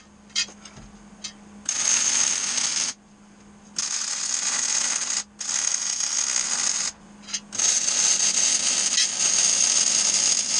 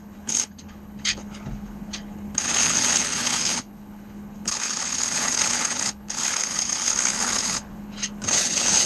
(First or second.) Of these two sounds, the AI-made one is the second